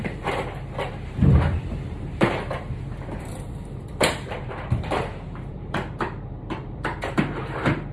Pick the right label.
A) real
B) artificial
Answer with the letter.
B